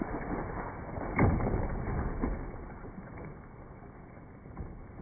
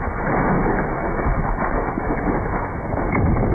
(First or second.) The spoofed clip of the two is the second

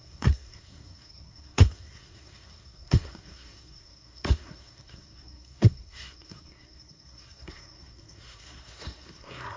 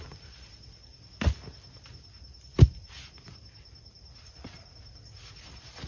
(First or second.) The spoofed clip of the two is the first